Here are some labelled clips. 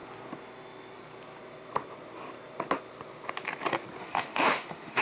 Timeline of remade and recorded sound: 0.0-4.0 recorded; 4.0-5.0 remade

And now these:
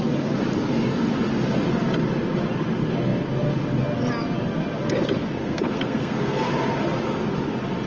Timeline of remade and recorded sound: 0.0-5.4 recorded; 5.4-6.5 remade; 6.5-7.9 recorded

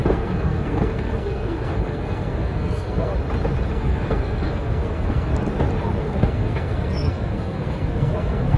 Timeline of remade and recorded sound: 0.0-3.1 remade; 3.1-3.7 recorded; 3.7-5.3 remade; 5.3-6.0 recorded; 6.0-8.6 remade

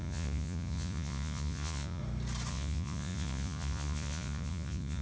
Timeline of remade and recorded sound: 0.0-2.0 remade; 2.0-2.5 recorded; 2.5-5.0 remade